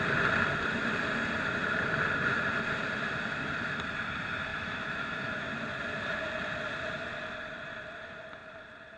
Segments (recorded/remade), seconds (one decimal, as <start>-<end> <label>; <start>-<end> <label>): 0.0-4.5 recorded; 4.5-5.5 remade; 5.5-9.0 recorded